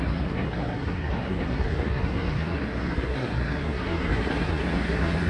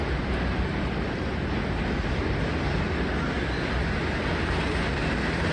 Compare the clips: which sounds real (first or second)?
second